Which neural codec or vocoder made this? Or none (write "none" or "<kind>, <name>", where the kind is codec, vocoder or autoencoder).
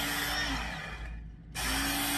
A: none